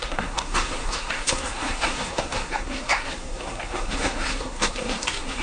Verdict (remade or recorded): remade